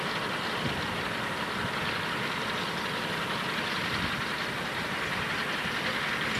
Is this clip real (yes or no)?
yes